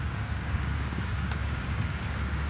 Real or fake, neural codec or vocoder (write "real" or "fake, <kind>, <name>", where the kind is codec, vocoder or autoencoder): fake, codec, DAC